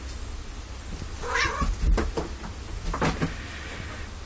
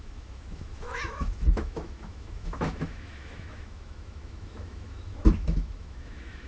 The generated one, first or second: second